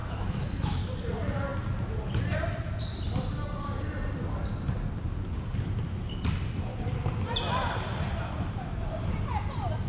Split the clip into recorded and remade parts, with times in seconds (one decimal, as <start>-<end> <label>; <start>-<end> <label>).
0.0-0.8 remade; 0.8-9.9 recorded